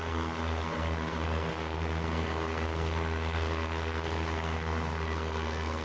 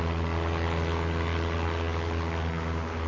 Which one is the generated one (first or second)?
first